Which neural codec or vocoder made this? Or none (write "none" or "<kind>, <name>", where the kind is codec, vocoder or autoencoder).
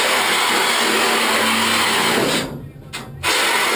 none